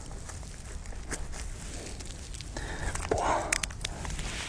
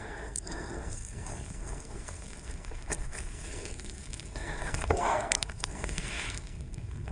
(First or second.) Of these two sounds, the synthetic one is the second